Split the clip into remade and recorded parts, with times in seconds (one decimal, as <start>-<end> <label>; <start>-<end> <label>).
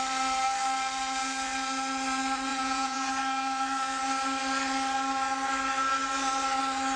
0.0-2.5 recorded; 2.5-3.1 remade; 3.1-7.0 recorded